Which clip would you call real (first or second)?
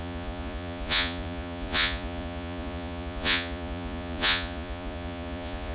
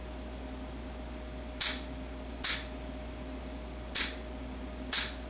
second